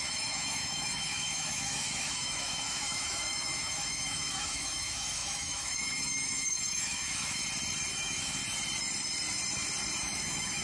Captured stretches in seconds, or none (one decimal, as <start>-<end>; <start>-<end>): 7.4-7.9; 8.4-10.0